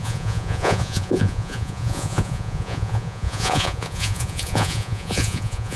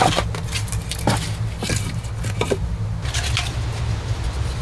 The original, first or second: second